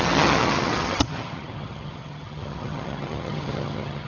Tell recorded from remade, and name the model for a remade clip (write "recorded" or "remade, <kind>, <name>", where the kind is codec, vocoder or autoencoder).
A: remade, vocoder, HiFi-GAN